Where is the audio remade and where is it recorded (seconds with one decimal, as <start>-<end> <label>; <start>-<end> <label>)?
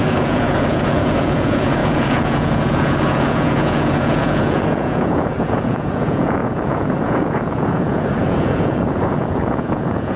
0.0-10.2 remade